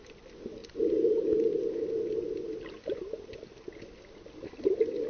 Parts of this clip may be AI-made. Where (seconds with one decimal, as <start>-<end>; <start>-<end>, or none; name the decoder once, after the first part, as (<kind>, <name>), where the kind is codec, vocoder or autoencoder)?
none